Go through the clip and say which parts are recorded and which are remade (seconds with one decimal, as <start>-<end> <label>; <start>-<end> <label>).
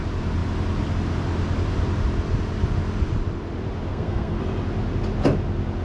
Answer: 0.0-3.9 recorded; 3.9-4.4 remade; 4.4-5.8 recorded